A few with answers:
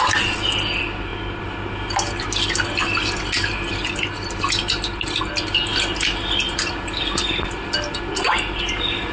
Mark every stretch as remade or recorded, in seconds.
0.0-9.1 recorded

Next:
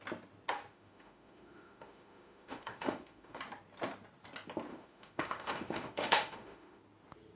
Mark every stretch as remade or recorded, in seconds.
0.0-0.7 recorded; 0.7-3.4 remade; 3.4-4.7 recorded; 4.7-6.8 remade; 6.8-7.4 recorded